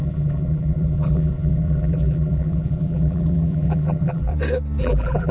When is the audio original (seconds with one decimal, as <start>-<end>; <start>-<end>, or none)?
4.3-4.8